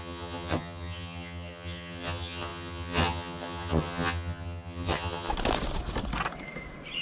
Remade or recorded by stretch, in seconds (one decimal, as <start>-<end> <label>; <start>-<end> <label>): 0.0-5.3 remade; 5.3-7.0 recorded